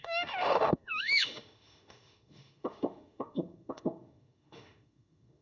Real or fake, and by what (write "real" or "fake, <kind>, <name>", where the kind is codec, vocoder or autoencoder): fake, autoencoder, DAC-VAE